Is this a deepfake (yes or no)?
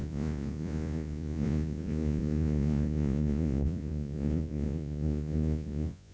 yes